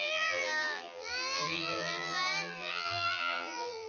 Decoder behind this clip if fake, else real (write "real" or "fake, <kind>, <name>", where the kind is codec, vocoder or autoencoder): fake, vocoder, BigVGAN v2